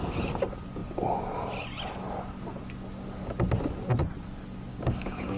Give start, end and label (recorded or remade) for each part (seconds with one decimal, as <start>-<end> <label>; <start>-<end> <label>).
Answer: 0.0-4.7 recorded; 4.7-5.4 remade